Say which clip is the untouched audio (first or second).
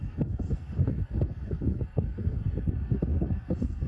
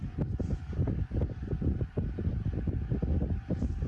second